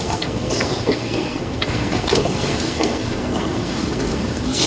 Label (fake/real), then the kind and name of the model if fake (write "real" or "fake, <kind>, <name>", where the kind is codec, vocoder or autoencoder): fake, codec, SNAC